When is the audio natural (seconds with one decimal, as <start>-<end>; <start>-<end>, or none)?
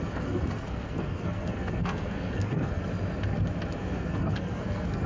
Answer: 2.8-3.8